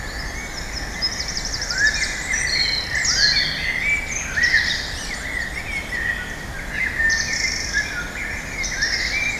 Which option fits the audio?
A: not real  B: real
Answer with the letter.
B